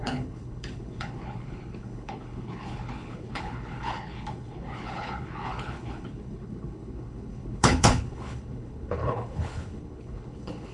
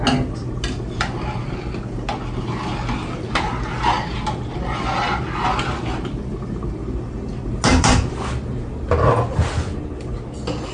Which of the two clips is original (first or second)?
second